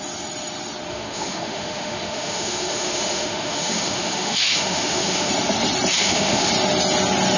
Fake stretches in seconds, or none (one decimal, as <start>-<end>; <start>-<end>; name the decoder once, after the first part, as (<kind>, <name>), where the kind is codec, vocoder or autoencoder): 0.9-5.3 (autoencoder, DAC-VAE); 5.9-6.5